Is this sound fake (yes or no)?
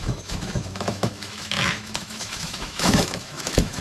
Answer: yes